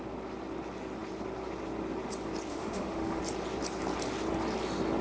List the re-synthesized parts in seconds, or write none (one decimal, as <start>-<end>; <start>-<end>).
2.5-3.2